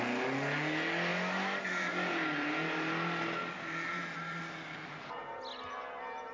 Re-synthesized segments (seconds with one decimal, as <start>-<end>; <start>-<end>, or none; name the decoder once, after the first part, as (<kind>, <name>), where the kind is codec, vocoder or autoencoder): none

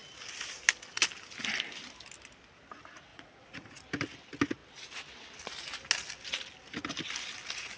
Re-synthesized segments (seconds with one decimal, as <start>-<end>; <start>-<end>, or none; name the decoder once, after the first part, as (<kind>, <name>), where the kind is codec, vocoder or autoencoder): 3.1-3.7 (vocoder, Vocos)

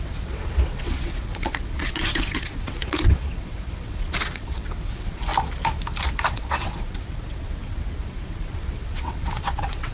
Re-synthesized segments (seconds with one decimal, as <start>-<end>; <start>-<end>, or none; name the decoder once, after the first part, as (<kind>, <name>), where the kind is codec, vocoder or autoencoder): 0.0-5.3 (vocoder, WaveNeXt); 6.3-9.9

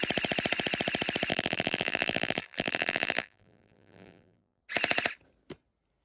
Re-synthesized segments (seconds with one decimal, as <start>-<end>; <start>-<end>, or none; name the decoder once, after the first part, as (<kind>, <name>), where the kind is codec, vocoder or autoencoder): 1.3-4.6 (vocoder, BigVGAN v2)

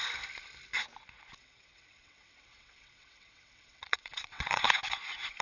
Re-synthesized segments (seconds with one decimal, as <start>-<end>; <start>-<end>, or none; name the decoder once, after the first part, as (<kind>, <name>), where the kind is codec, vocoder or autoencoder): 1.4-4.6 (vocoder, WaveNeXt)